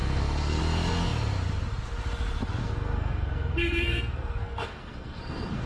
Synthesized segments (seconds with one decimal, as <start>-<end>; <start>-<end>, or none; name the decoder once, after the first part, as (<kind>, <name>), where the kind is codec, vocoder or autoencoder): 0.0-0.6 (codec, SNAC); 2.6-5.7